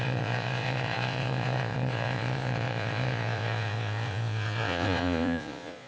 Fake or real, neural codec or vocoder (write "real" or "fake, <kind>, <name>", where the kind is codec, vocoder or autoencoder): fake, vocoder, Vocos